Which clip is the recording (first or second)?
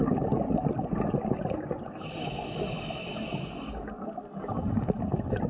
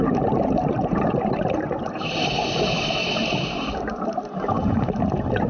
first